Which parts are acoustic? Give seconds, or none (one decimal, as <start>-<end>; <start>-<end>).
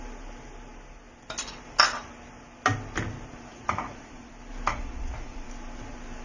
0.0-3.5; 4.3-4.7; 5.5-6.2